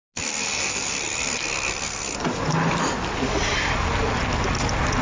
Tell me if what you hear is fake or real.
real